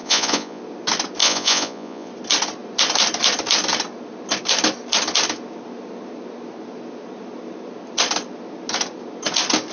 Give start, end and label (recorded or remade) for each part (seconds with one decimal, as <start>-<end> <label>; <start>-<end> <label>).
0.0-0.6 remade; 0.6-1.2 recorded; 1.2-2.1 remade; 2.1-9.7 recorded